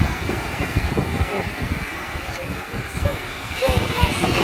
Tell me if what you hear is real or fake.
fake